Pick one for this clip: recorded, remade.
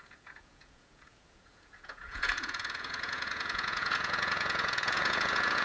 remade